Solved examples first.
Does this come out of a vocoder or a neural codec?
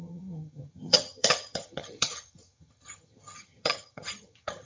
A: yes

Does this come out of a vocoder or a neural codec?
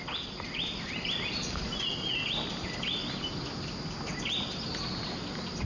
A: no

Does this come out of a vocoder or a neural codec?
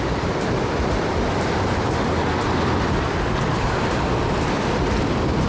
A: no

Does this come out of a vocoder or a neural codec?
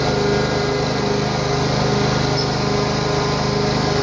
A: no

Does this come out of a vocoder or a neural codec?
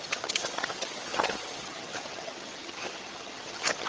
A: yes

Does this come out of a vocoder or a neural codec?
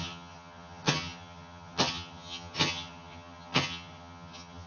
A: yes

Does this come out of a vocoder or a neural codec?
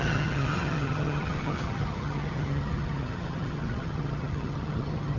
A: yes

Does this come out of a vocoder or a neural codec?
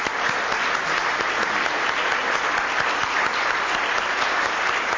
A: no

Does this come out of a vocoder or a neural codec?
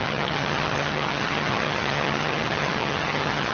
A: yes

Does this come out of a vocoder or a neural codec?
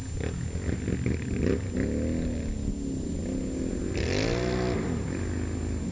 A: no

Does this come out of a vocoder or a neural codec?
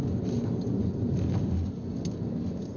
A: no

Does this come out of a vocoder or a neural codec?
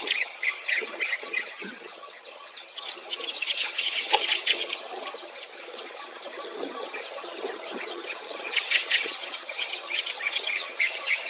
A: yes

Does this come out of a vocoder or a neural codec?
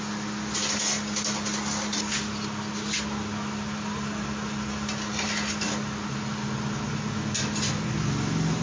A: no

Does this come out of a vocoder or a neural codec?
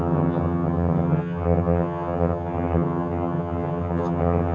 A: yes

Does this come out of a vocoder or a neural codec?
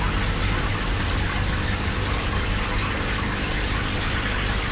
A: no